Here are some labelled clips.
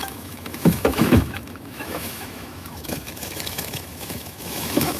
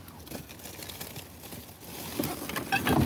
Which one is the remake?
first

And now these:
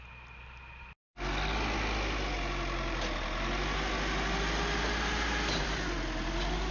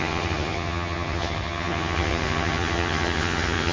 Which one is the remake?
second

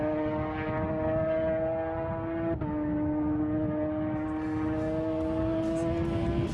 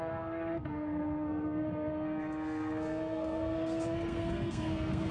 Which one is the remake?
second